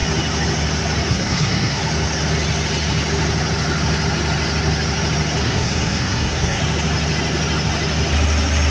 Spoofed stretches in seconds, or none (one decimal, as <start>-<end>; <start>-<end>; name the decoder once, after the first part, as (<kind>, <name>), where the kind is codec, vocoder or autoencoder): 1.1-1.8 (codec, SNAC); 5.4-6.6